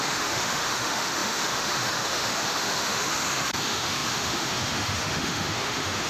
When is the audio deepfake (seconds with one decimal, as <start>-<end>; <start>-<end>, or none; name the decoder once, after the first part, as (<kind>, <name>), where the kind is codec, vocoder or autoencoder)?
0.0-6.1 (autoencoder, DAC-VAE)